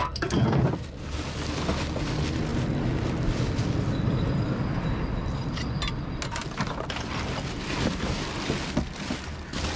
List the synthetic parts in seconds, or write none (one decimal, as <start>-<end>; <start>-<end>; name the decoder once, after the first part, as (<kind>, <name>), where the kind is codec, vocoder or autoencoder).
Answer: 0.0-0.6 (codec, SNAC)